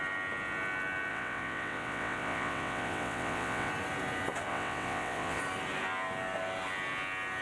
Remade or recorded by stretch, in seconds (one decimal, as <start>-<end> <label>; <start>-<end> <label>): 0.0-1.1 recorded; 1.1-3.7 remade; 3.7-4.5 recorded; 4.5-5.4 remade; 5.4-7.4 recorded